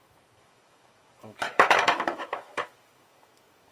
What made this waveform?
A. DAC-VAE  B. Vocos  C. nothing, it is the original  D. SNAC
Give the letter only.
A